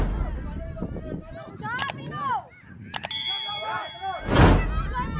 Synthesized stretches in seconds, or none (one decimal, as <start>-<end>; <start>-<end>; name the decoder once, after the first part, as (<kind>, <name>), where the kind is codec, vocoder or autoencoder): none